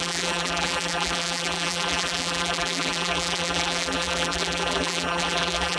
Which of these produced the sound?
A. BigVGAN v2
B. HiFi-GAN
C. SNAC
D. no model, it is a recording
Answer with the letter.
A